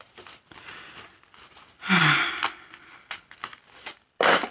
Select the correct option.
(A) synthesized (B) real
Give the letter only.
B